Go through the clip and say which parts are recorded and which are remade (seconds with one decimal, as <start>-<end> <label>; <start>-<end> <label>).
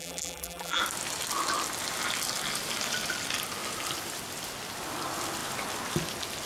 0.0-0.8 remade; 0.8-6.5 recorded